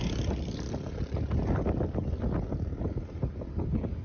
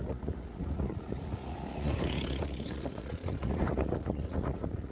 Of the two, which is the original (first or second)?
first